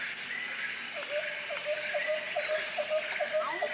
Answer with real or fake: real